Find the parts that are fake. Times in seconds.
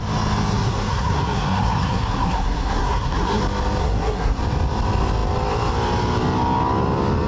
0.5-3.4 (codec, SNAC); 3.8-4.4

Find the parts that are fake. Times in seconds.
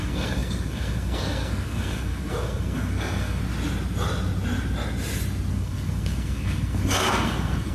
0.0-3.4 (codec, SNAC); 5.5-7.7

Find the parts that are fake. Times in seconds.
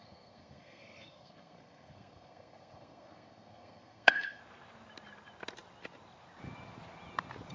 0.0-4.4 (codec, SNAC)